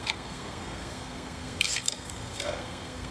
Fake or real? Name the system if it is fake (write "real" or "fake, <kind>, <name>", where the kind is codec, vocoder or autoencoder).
fake, codec, SNAC